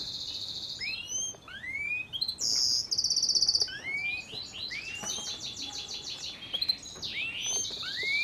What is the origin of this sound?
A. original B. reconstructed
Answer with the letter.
A